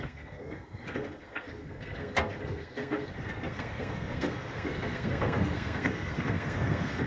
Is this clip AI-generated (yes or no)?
yes